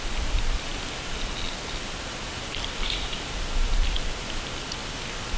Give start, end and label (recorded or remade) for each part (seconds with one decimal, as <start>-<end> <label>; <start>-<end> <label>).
0.0-5.4 recorded